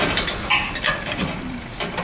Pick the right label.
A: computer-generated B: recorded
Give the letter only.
A